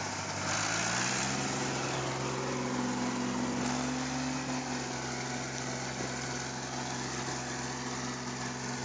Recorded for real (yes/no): yes